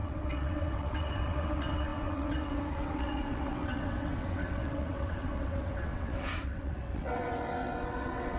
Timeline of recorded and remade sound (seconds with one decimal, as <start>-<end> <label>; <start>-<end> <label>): 0.0-8.4 remade